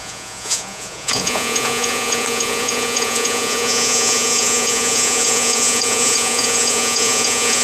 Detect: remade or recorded remade